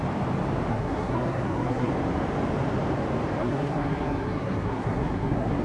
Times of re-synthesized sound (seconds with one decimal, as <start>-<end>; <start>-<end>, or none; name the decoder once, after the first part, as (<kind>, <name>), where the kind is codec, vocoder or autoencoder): 0.7-1.9 (codec, SNAC); 3.4-5.6